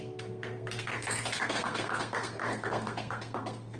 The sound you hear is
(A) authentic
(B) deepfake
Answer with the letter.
B